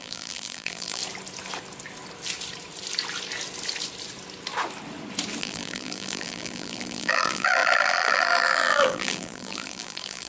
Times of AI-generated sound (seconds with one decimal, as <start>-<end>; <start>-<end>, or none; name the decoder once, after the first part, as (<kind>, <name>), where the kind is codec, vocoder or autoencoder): 0.0-1.0 (vocoder, BigVGAN v2); 5.4-10.3